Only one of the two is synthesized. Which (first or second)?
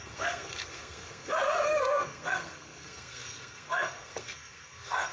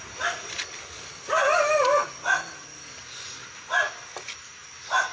first